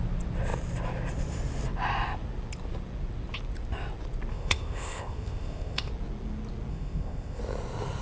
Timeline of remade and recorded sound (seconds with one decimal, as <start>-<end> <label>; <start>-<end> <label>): 0.0-4.3 recorded; 4.3-5.9 remade; 5.9-6.7 recorded; 6.7-7.4 remade; 7.4-8.0 recorded